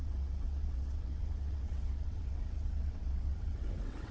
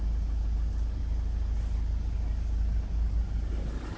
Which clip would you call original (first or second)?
second